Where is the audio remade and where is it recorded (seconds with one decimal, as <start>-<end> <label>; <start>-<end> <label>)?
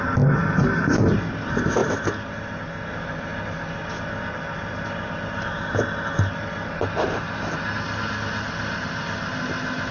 0.0-9.9 recorded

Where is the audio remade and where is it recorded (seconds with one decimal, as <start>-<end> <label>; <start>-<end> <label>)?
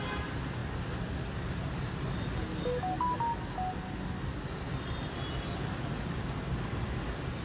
0.0-7.4 recorded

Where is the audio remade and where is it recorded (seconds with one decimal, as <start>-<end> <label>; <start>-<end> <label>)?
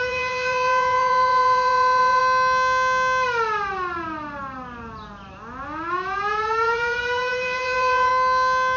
0.0-2.2 remade; 2.2-5.9 recorded; 5.9-8.1 remade; 8.1-8.8 recorded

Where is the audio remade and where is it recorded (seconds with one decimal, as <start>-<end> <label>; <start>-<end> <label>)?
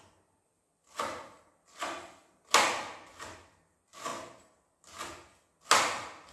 0.0-6.3 recorded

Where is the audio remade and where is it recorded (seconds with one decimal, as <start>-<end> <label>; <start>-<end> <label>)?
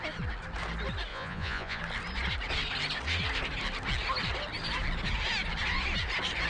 0.0-1.1 recorded; 1.1-1.8 remade; 1.8-6.5 recorded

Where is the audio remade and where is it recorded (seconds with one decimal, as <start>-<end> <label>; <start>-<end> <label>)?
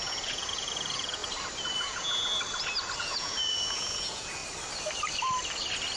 0.0-1.2 remade; 1.2-1.8 recorded; 1.8-2.3 remade; 2.3-3.0 recorded; 3.0-4.4 remade; 4.4-6.0 recorded